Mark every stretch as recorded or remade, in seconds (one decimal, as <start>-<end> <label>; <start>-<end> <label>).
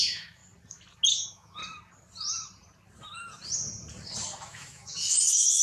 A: 0.0-0.4 remade; 0.4-1.1 recorded; 1.1-1.6 remade; 1.6-4.4 recorded; 4.4-5.6 remade